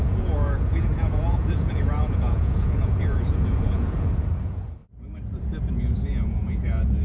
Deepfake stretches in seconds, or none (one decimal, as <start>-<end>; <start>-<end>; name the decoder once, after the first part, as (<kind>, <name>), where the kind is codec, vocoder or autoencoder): 0.0-4.8 (vocoder, Vocos); 5.7-7.0